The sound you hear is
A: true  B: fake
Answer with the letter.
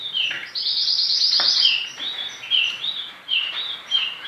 B